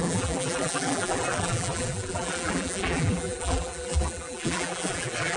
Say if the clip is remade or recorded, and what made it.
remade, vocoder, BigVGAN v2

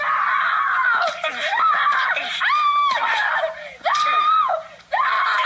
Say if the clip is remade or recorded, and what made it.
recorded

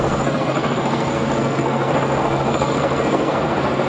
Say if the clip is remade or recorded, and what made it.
remade, codec, SNAC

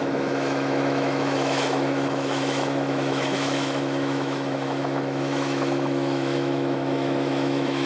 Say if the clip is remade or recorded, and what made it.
remade, autoencoder, DAC-VAE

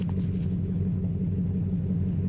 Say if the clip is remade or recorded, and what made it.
remade, codec, HILCodec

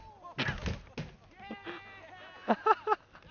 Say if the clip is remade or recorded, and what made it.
recorded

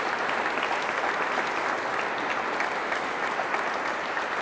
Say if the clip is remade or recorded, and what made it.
recorded